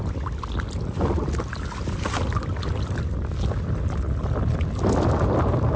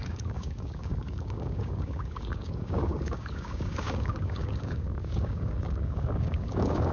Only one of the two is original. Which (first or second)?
first